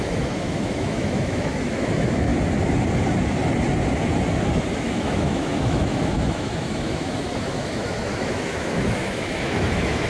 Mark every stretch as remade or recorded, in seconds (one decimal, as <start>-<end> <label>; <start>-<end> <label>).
0.0-2.3 remade; 2.3-4.7 recorded; 4.7-10.1 remade